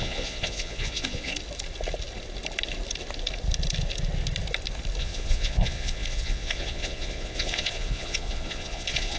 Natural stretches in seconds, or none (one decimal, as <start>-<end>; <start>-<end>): 1.3-5.0